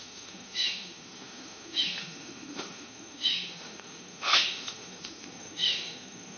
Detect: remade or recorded remade